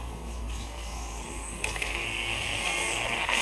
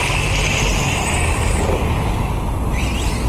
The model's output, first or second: first